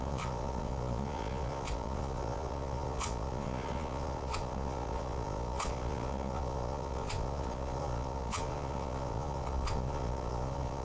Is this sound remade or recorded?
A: remade